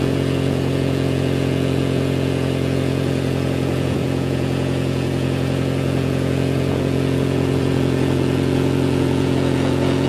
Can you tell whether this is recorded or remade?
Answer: remade